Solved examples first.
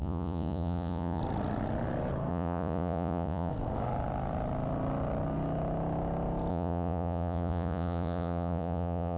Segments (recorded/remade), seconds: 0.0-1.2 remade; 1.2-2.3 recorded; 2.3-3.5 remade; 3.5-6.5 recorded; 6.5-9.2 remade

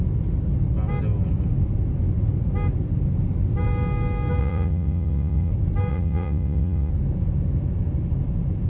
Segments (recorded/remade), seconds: 0.0-4.4 recorded; 4.4-5.5 remade; 5.5-5.9 recorded; 5.9-6.9 remade; 6.9-8.7 recorded

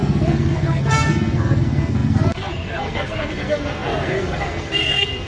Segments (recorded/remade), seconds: 0.0-5.3 remade

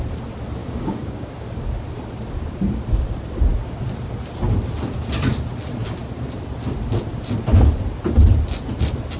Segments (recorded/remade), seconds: 0.0-0.6 recorded; 0.6-1.3 remade; 1.3-9.2 recorded